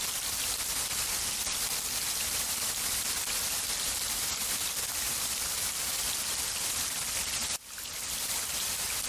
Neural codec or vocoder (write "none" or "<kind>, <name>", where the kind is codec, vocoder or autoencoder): none